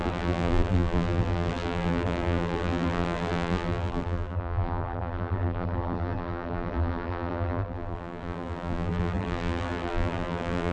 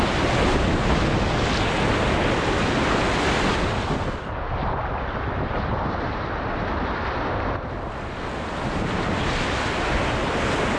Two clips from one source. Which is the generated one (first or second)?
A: first